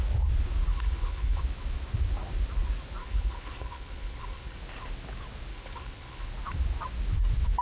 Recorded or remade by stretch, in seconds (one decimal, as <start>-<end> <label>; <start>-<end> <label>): 0.0-0.7 recorded; 0.7-1.4 remade; 1.4-3.0 recorded; 3.0-4.6 remade; 4.6-5.5 recorded; 5.5-6.3 remade; 6.3-7.6 recorded